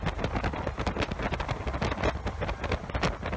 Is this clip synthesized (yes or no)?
no